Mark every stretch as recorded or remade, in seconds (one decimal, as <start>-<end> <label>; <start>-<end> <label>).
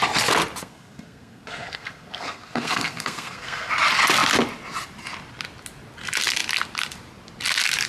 0.0-0.6 recorded; 0.6-3.7 remade; 3.7-7.9 recorded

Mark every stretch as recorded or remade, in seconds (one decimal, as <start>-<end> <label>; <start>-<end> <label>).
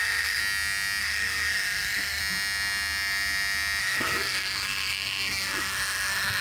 0.0-0.4 remade; 0.4-1.0 recorded; 1.0-2.2 remade; 2.2-3.8 recorded; 3.8-6.4 remade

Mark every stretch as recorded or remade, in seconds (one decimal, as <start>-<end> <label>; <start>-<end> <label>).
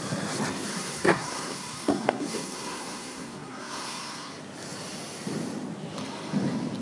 0.0-0.7 recorded; 0.7-4.3 remade; 4.3-6.8 recorded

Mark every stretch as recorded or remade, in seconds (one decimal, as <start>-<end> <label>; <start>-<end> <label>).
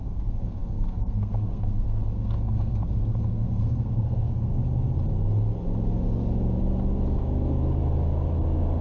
0.0-4.5 remade; 4.5-8.8 recorded